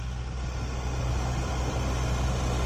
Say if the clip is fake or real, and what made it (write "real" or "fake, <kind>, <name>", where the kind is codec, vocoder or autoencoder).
real